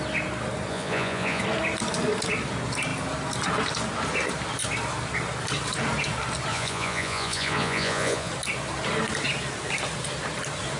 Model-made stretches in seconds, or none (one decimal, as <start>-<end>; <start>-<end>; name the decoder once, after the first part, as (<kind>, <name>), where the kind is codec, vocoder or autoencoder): 0.7-1.4 (vocoder, Vocos); 6.5-8.3